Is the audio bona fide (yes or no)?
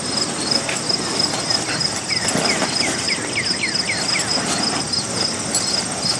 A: yes